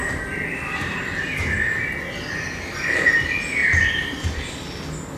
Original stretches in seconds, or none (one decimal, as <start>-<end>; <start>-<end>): 1.9-3.6; 4.5-5.2